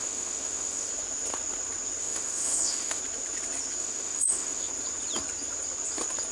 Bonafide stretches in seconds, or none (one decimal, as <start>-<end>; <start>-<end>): 0.9-2.0; 3.0-3.8; 4.7-6.3